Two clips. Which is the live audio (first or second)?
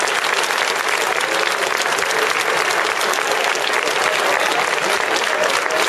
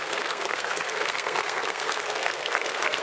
first